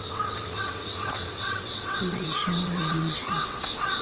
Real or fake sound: fake